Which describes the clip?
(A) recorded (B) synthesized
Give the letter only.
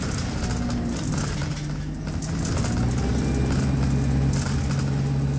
A